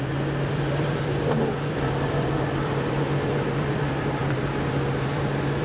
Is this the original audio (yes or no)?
no